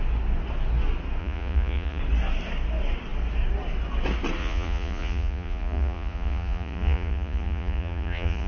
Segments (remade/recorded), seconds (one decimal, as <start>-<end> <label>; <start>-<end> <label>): 0.0-1.2 recorded; 1.2-2.0 remade; 2.0-4.4 recorded; 4.4-8.5 remade